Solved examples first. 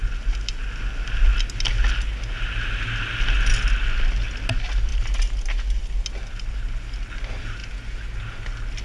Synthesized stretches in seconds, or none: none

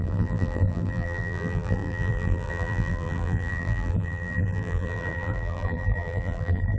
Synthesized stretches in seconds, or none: 0.0-6.8 (vocoder, BigVGAN v2)

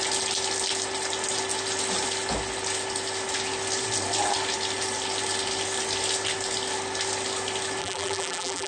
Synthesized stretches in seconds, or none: 7.8-8.7 (vocoder, BigVGAN v2)

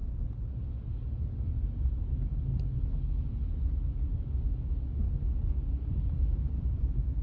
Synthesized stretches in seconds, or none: none

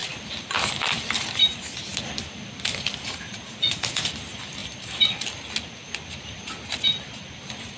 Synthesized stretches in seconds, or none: 0.0-1.2 (vocoder, BigVGAN v2); 1.9-2.5

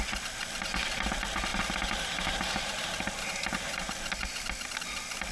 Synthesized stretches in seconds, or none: 1.5-3.9 (vocoder, BigVGAN v2)

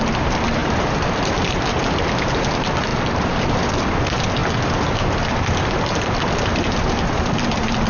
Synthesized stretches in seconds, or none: 0.0-4.4 (vocoder, BigVGAN v2); 4.9-7.9